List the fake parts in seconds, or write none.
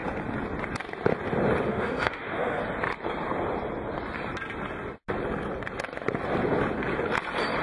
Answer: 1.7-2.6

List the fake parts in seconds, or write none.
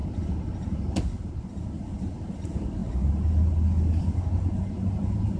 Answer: none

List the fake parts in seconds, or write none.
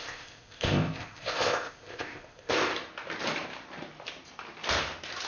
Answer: 0.0-2.7